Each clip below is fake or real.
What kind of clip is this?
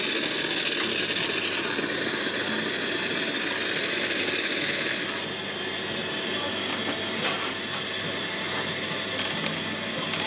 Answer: real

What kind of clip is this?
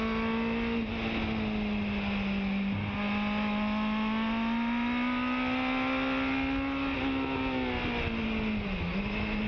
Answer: real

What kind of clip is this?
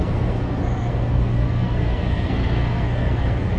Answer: fake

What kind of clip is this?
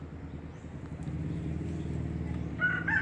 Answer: real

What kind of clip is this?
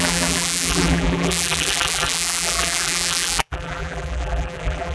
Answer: fake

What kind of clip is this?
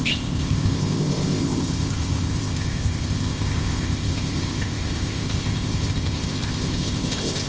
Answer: fake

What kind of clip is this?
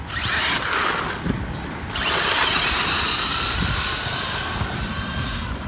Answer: real